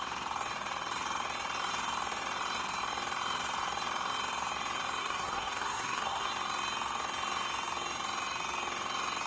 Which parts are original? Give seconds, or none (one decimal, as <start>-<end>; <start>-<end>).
0.0-5.0; 6.3-9.3